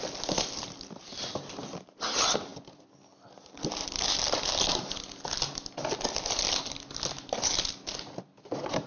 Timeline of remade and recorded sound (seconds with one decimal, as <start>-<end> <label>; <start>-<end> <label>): 0.0-8.9 recorded